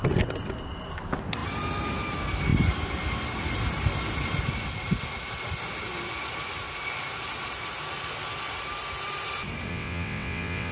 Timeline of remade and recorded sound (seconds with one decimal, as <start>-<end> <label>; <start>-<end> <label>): 0.0-9.7 recorded; 9.7-10.7 remade